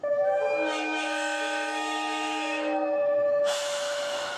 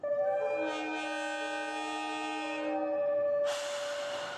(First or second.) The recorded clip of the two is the second